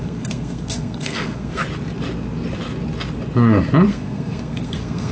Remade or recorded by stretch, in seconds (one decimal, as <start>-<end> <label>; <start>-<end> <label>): 0.0-1.6 remade; 1.6-3.9 recorded; 3.9-5.1 remade